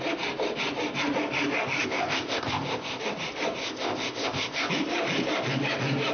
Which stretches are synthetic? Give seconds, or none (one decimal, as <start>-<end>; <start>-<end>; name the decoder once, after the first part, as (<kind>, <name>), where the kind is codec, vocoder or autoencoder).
1.8-3.0 (codec, ZipCodec); 3.6-4.7